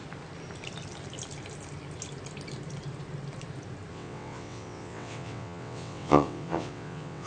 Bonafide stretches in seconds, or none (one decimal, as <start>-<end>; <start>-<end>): 0.0-3.9